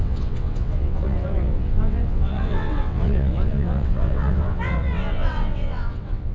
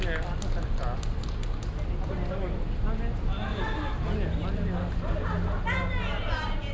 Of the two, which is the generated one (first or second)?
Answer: first